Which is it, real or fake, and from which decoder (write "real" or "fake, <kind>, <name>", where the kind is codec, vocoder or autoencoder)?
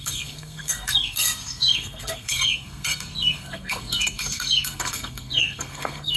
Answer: fake, codec, SNAC